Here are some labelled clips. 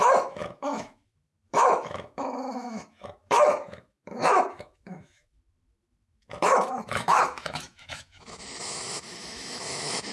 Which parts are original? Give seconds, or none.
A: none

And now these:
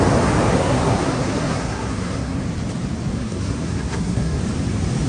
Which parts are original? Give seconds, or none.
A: 0.0-0.5; 2.4-3.1; 4.4-5.1

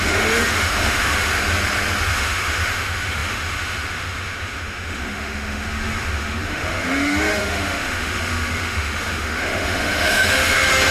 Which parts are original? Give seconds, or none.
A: 1.3-2.1

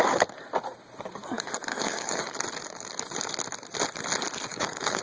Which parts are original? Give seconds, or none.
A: 0.0-1.7; 2.3-4.5

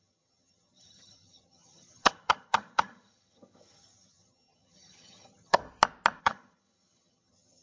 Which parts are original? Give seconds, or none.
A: 5.6-6.2

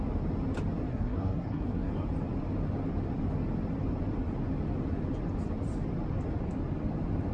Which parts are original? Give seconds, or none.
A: 0.0-0.9; 1.9-7.3